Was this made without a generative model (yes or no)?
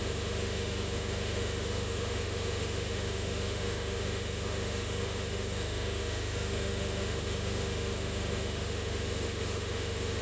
no